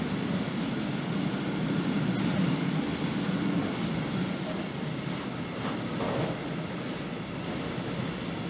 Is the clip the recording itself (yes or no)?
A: yes